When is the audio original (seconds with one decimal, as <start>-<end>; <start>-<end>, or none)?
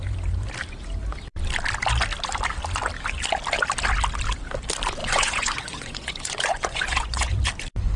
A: 0.0-5.0; 7.3-8.0